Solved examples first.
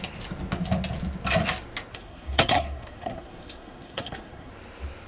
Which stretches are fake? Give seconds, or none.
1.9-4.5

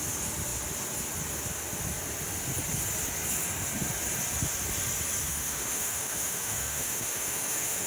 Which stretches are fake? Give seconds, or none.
5.2-7.9

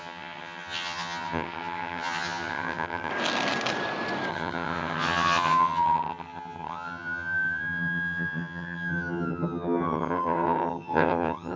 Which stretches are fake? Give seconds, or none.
0.0-3.1; 4.3-11.6

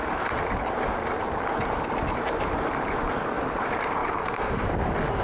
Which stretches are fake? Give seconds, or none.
4.0-4.7